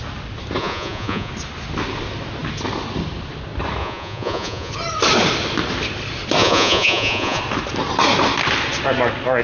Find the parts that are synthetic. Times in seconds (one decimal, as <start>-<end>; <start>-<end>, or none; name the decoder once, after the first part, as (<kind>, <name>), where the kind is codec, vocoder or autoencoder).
0.6-1.3 (vocoder, Vocos); 3.8-4.7; 6.4-7.4